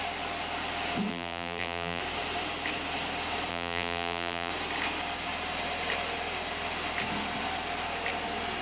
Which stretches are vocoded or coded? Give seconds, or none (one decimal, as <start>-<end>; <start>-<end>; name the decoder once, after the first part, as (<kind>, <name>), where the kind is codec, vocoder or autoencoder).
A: 1.1-2.0 (vocoder, BigVGAN v2); 3.5-4.5